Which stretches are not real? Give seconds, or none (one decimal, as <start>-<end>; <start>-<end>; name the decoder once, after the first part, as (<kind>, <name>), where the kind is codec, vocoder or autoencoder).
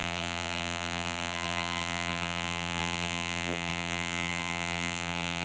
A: 0.0-5.4 (vocoder, BigVGAN v2)